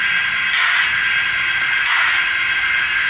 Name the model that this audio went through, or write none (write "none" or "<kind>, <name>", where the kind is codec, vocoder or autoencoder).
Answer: none